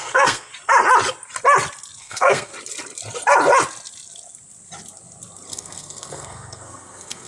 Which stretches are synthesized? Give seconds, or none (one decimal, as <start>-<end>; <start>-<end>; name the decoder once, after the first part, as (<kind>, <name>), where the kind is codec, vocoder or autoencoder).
0.0-0.5 (codec, SNAC); 2.0-2.5; 5.5-7.3

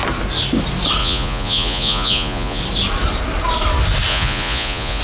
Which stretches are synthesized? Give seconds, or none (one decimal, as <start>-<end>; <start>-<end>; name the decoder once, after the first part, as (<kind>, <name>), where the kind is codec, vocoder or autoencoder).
1.0-2.6 (vocoder, Vocos); 4.1-5.0

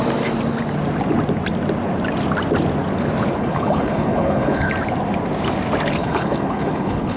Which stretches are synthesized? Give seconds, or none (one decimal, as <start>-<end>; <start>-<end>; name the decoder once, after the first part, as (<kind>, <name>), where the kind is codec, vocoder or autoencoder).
3.4-4.7 (codec, HILCodec); 6.0-7.2

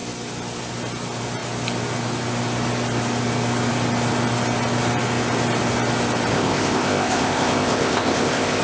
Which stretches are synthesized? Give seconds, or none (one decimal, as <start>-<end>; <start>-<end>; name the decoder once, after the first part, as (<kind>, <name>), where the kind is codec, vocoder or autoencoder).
6.3-8.6 (codec, ZipCodec)

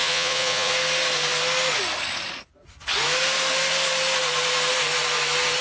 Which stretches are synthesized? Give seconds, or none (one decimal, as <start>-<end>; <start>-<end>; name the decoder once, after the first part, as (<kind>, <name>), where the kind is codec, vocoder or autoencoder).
0.0-0.7 (vocoder, Vocos)

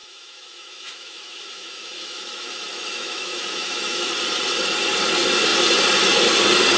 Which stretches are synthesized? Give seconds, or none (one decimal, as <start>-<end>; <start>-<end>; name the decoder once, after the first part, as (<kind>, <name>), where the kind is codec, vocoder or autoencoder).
0.0-4.1 (autoencoder, DAC-VAE)

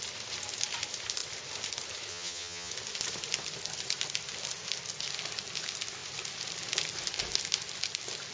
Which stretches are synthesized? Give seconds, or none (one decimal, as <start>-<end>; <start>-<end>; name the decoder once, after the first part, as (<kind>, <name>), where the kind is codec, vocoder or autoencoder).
2.1-2.7 (vocoder, HiFi-GAN)